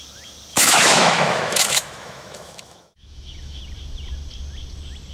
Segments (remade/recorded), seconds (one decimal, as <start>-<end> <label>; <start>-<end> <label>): 0.0-0.5 recorded; 0.5-3.6 remade; 3.6-5.1 recorded